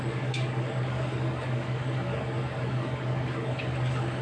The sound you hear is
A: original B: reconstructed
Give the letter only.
B